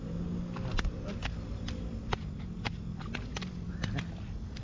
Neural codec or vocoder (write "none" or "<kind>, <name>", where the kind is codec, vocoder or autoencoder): none